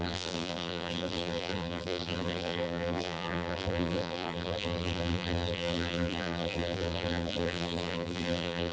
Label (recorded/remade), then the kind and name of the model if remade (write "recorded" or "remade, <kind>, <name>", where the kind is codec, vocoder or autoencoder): remade, vocoder, BigVGAN v2